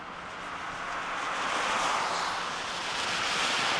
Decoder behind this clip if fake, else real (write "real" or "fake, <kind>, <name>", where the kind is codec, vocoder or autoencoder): real